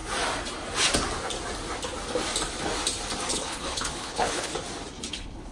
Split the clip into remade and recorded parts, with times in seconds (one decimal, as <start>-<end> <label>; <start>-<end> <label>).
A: 0.0-3.3 recorded; 3.3-4.5 remade; 4.5-5.1 recorded; 5.1-5.5 remade